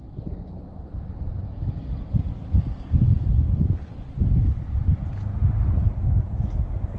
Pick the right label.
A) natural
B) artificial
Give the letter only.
A